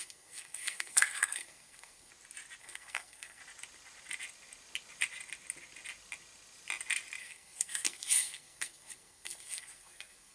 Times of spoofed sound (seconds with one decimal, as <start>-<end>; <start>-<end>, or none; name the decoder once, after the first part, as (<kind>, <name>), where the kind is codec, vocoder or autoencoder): 0.0-2.1 (codec, SNAC); 2.6-3.4; 7.2-10.3